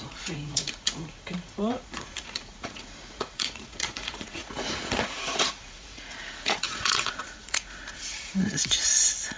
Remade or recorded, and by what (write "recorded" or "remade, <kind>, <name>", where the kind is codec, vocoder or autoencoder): remade, vocoder, Vocos